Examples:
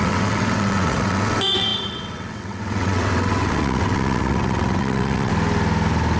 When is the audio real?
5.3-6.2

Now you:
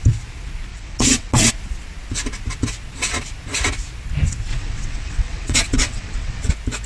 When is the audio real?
0.0-0.7; 1.5-4.5; 6.5-6.9

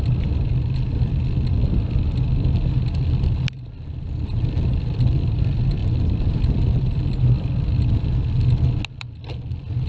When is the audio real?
0.0-9.9

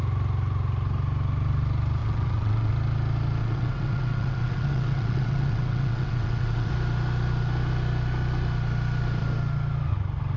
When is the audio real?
0.0-2.0; 2.7-3.4; 6.7-10.4

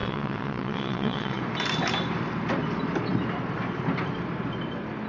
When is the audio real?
1.4-5.1

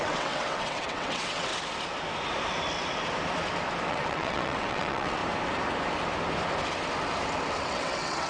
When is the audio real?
1.5-3.9; 5.2-7.6

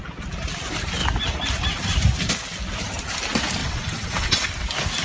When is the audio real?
0.0-3.6; 4.5-5.0

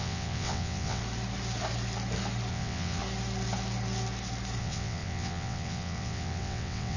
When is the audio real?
1.0-2.5; 3.0-4.6